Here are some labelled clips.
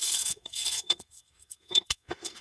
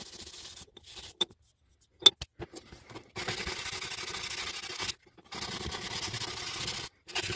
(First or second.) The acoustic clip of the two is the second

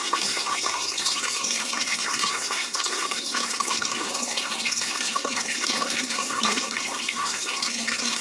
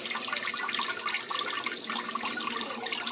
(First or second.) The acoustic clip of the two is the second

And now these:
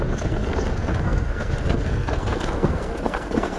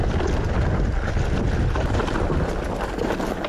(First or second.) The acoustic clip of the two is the second